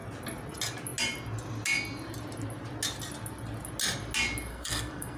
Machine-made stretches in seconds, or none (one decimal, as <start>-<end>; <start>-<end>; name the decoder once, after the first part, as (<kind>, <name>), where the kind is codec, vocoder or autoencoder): 4.5-5.2 (codec, SNAC)